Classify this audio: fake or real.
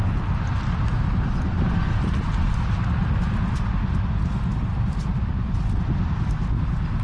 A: real